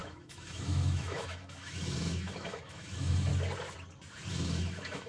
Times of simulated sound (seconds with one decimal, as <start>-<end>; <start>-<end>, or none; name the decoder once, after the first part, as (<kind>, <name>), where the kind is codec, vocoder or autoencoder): 0.0-3.3 (autoencoder, DAC-VAE); 4.3-5.1